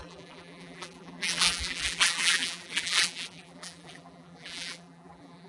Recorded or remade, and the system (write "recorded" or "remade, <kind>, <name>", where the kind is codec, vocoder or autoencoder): remade, vocoder, BigVGAN v2